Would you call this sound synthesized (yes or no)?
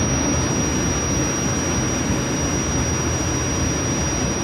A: no